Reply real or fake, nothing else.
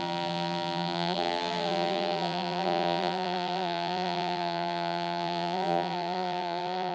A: fake